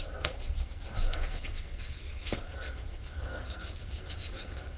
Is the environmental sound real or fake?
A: fake